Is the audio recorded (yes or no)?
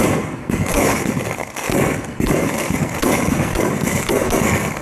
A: no